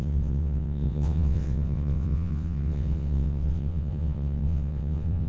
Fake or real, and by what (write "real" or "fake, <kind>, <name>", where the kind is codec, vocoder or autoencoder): fake, vocoder, WaveNeXt